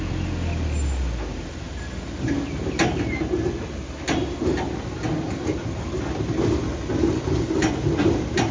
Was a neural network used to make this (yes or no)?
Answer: no